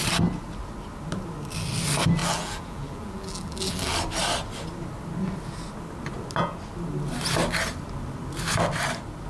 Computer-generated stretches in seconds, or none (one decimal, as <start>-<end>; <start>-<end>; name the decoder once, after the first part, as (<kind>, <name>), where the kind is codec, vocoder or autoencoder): 2.2-3.9 (vocoder, BigVGAN v2)